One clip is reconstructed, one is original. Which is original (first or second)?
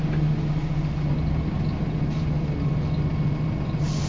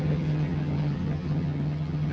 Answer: first